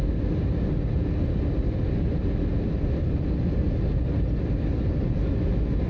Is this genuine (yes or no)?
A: yes